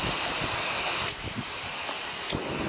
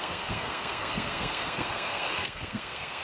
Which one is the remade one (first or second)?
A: second